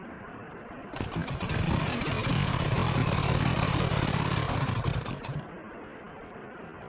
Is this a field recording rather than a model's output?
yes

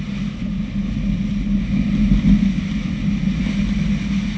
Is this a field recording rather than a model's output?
yes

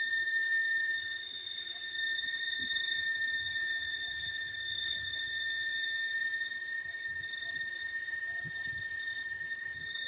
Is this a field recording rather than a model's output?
no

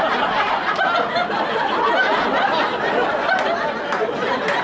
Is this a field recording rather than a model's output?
yes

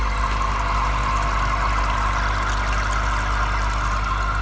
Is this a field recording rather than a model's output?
yes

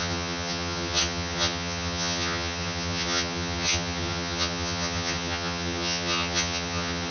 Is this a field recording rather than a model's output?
no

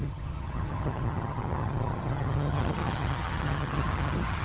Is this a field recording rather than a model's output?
no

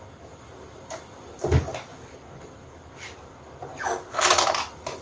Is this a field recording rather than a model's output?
yes